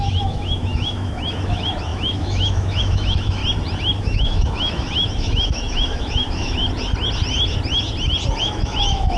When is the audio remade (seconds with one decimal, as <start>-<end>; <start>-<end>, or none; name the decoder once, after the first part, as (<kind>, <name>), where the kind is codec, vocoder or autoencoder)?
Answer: 0.0-3.4 (autoencoder, DAC-VAE); 4.0-6.6; 8.4-9.2